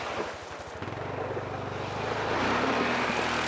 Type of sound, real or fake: real